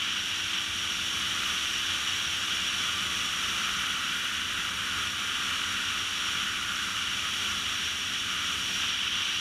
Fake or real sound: real